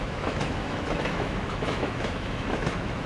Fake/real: fake